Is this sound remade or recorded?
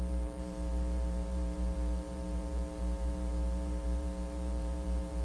remade